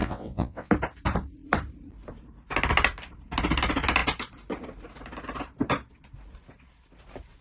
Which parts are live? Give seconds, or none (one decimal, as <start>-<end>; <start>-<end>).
0.7-7.4